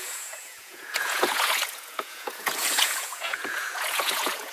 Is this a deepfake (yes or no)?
yes